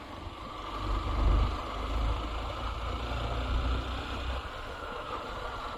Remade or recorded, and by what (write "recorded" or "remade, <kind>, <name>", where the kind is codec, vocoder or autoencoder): recorded